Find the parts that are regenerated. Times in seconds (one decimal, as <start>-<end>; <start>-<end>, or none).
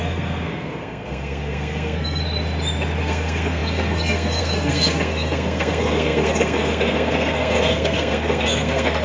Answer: 0.0-2.2; 3.0-9.0